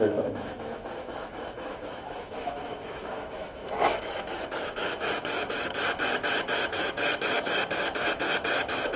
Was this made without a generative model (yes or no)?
no